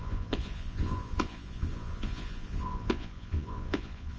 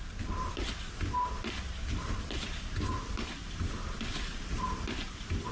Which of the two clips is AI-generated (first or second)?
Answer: first